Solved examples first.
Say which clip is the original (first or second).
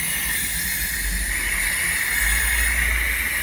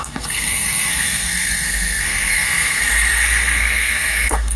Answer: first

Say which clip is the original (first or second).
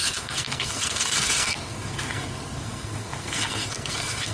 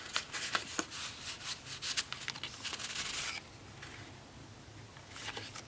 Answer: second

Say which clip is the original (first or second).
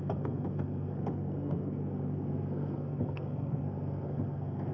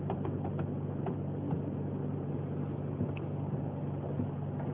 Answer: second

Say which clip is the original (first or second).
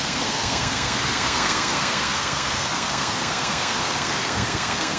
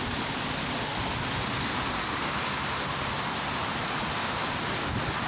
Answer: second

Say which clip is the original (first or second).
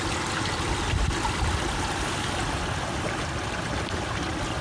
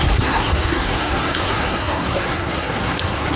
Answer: first